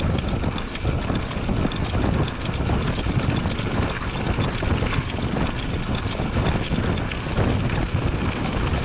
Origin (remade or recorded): recorded